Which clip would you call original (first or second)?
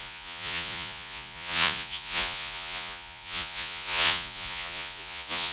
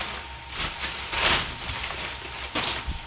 second